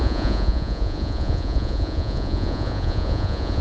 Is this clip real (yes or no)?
no